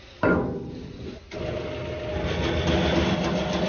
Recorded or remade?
recorded